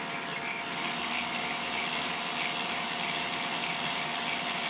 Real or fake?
real